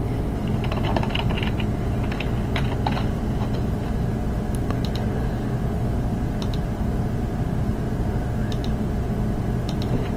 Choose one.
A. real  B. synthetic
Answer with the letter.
A